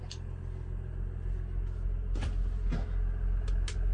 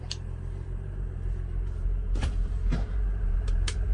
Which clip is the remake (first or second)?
second